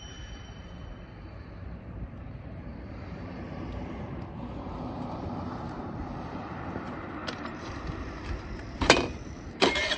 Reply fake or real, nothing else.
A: fake